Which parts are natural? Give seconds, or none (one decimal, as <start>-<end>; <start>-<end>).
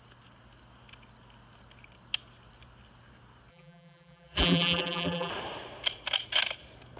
0.0-3.5; 5.3-7.0